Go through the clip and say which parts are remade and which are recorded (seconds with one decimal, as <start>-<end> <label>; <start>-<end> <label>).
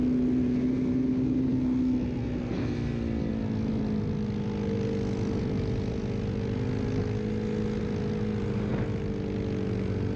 0.0-10.2 recorded